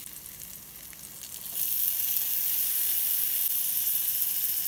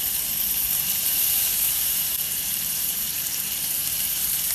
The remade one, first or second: second